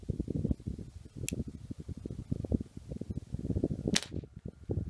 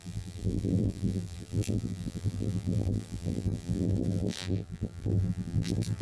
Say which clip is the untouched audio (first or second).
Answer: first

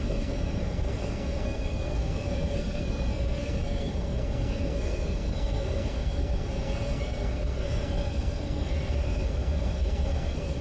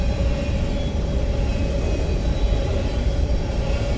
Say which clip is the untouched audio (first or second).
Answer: second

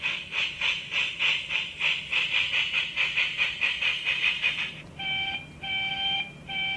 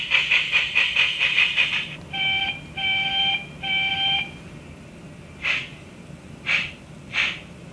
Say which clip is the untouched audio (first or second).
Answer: first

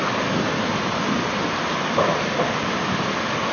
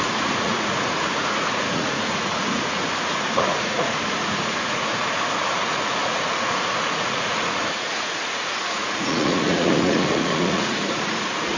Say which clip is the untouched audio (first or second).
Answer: first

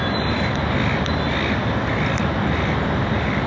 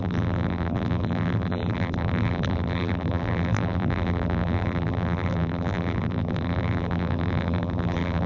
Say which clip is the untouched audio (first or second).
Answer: first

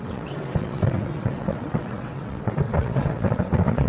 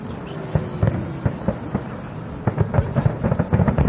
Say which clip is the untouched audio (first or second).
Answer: second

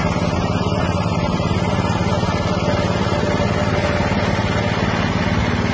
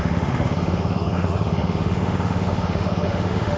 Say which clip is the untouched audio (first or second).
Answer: first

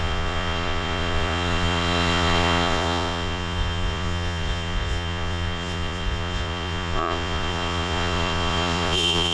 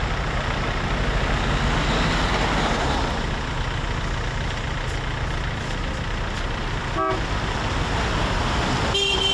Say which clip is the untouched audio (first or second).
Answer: second